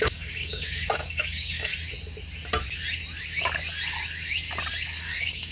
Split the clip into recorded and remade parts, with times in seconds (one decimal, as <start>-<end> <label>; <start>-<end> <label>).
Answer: 0.0-1.7 remade; 1.7-5.0 recorded; 5.0-5.5 remade

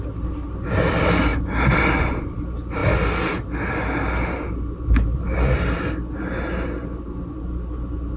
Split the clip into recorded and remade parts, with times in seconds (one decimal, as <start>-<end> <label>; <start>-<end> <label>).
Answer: 0.0-8.2 recorded